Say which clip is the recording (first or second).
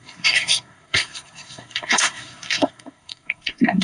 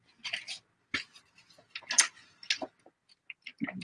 second